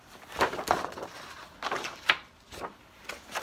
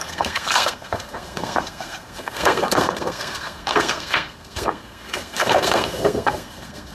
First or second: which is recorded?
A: first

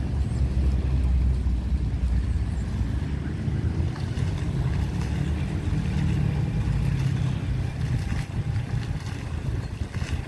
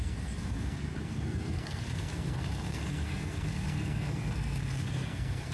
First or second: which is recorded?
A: first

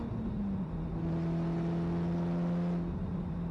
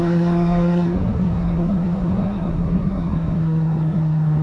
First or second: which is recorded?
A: first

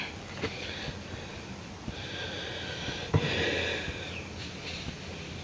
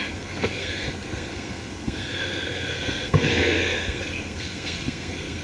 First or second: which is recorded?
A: first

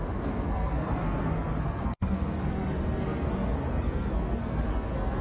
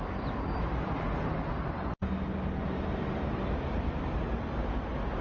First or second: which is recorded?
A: second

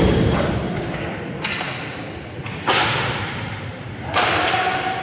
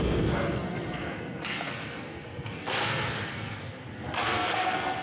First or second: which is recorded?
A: first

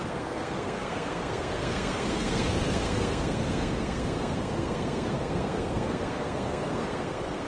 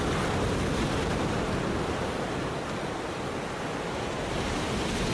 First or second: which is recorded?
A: second